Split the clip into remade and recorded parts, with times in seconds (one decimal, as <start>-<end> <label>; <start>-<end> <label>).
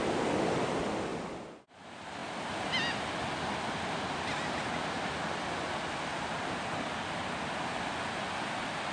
0.0-8.9 recorded